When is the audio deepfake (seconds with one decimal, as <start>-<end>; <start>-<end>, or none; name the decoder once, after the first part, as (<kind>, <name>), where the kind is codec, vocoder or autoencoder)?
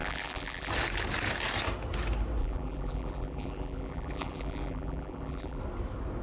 0.0-0.7 (vocoder, BigVGAN v2); 2.4-5.6